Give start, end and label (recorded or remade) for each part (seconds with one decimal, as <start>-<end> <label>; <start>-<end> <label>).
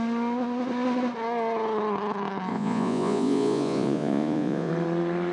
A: 0.0-2.5 recorded; 2.5-4.7 remade; 4.7-5.3 recorded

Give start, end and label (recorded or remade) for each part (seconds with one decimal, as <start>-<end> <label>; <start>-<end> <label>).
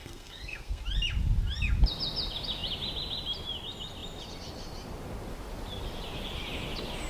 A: 0.0-0.8 remade; 0.8-7.1 recorded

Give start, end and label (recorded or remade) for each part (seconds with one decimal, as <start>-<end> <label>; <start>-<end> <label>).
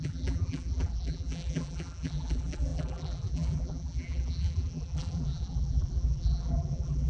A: 0.0-7.1 remade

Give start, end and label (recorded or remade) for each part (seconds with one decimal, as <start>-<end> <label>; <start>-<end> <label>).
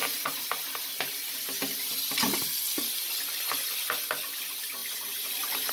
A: 0.0-1.6 remade; 1.6-4.8 recorded; 4.8-5.7 remade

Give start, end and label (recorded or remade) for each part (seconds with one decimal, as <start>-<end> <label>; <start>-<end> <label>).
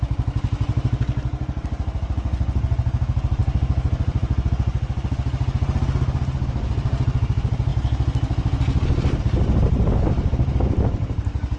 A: 0.0-11.6 recorded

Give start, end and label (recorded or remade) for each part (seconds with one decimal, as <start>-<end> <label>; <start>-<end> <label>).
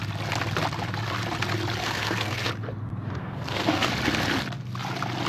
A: 0.0-1.8 recorded; 1.8-2.5 remade; 2.5-3.2 recorded; 3.2-3.9 remade; 3.9-5.3 recorded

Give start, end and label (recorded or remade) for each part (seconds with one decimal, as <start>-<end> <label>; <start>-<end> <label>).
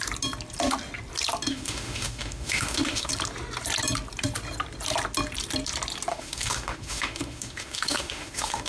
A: 0.0-1.5 recorded; 1.5-3.1 remade; 3.1-6.1 recorded; 6.1-8.7 remade